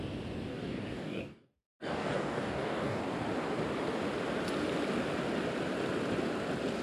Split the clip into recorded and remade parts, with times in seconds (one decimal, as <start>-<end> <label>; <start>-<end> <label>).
0.0-0.5 recorded; 0.5-3.0 remade; 3.0-6.8 recorded